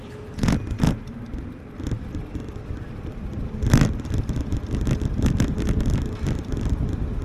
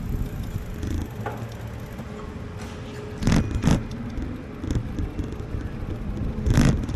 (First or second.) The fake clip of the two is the first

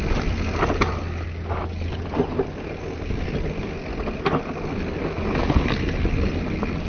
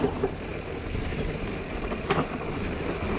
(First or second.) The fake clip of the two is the second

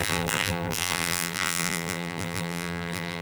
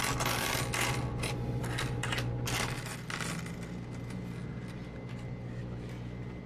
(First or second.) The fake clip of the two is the first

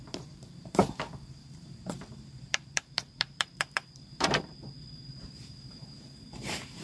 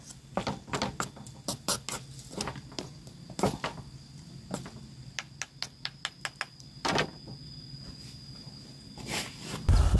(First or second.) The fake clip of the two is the first